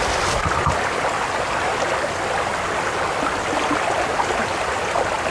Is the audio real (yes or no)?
yes